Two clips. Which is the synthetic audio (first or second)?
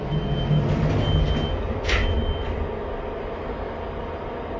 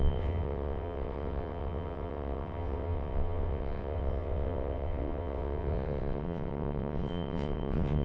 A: second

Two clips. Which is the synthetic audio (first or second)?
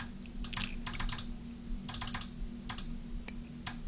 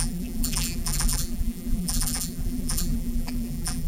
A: second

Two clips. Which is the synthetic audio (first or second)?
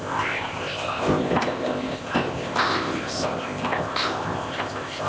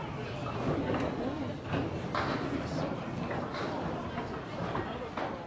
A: first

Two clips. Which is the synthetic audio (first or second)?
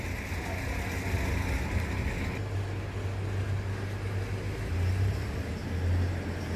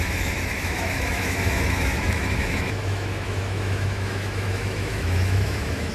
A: second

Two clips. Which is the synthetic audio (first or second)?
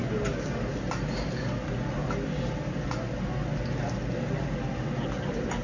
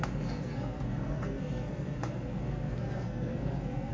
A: second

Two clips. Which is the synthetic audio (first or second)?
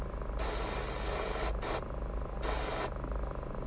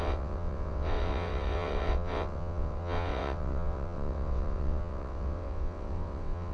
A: second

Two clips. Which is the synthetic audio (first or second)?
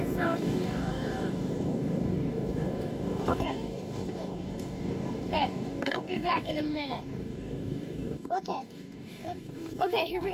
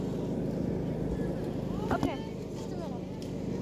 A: first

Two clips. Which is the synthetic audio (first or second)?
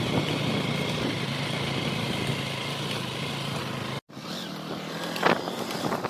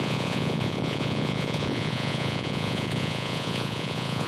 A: second